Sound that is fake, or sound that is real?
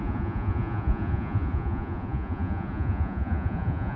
fake